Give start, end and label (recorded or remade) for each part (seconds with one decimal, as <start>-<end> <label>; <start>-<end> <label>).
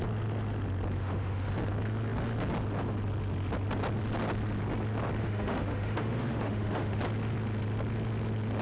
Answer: 0.0-1.0 recorded; 1.0-1.5 remade; 1.5-5.2 recorded; 5.2-7.0 remade; 7.0-8.6 recorded